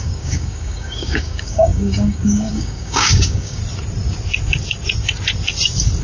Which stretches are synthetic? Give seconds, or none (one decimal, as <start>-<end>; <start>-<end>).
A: 0.0-3.6